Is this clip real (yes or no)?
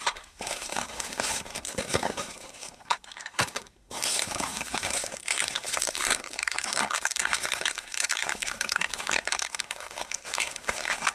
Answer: no